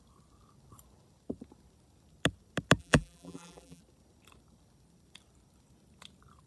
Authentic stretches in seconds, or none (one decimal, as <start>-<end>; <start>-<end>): 0.0-2.8; 3.8-6.5